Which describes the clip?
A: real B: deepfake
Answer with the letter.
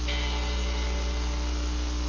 A